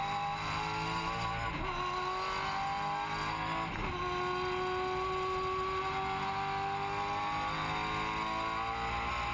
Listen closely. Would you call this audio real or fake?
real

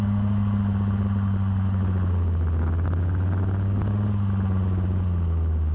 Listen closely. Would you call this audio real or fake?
real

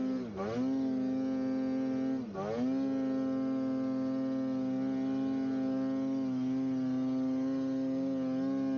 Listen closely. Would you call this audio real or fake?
real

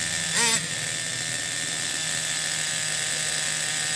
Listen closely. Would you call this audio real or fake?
real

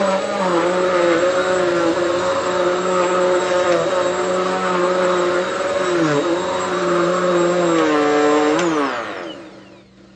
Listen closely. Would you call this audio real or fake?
real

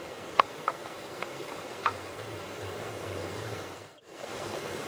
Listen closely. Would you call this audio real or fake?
fake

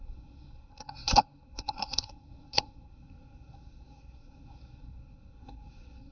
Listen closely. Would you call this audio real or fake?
fake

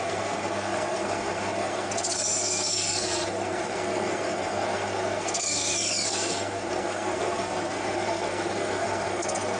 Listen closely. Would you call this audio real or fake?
fake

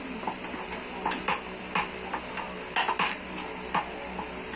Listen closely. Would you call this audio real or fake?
real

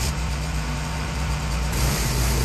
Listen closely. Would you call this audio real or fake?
fake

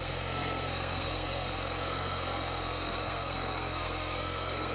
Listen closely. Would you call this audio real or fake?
fake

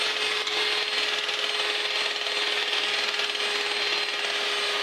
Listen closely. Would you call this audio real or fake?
real